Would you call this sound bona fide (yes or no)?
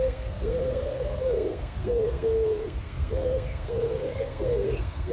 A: no